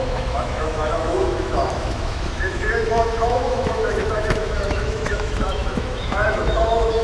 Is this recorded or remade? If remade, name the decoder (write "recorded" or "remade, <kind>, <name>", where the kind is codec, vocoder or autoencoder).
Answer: remade, autoencoder, DAC-VAE